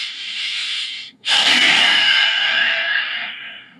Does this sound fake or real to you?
fake